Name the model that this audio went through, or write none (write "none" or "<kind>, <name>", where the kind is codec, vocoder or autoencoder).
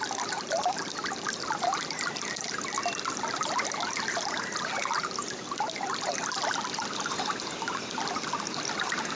none